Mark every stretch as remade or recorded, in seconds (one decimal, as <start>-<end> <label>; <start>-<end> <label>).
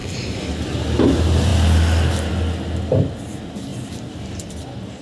0.0-5.0 recorded